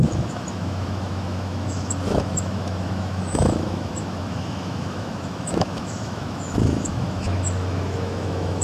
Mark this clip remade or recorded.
remade